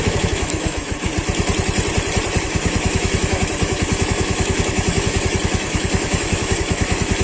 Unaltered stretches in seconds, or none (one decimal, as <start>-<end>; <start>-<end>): 1.1-2.4